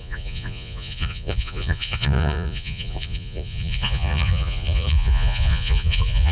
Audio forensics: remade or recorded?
remade